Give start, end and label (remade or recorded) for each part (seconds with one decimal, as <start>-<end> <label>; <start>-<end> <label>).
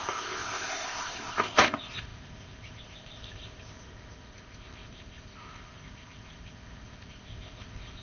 0.0-8.0 remade